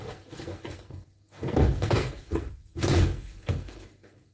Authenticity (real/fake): fake